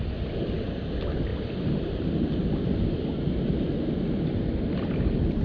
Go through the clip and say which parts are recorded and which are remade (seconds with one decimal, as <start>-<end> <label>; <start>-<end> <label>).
0.0-5.4 recorded

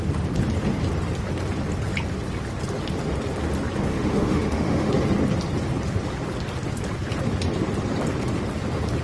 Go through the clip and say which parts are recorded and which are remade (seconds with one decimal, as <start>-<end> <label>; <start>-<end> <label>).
0.0-3.9 recorded; 3.9-4.9 remade; 4.9-9.0 recorded

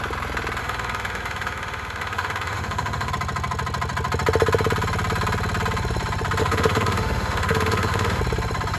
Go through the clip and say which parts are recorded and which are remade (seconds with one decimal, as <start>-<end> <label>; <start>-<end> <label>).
0.0-0.6 recorded; 0.6-3.1 remade; 3.1-6.4 recorded; 6.4-8.2 remade; 8.2-8.8 recorded

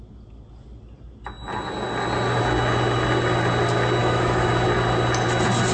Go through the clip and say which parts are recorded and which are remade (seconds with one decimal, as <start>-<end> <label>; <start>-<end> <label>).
0.0-4.0 recorded; 4.0-4.5 remade; 4.5-5.7 recorded

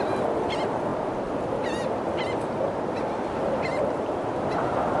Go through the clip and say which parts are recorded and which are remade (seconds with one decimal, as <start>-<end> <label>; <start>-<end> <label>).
0.0-5.0 recorded

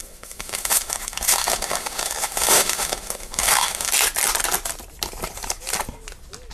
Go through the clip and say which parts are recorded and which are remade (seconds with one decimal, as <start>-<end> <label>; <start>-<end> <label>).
0.0-3.9 remade; 3.9-6.5 recorded

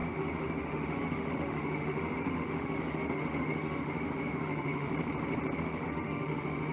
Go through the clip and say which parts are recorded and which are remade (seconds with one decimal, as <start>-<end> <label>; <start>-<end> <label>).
0.0-4.9 remade; 4.9-5.6 recorded; 5.6-6.7 remade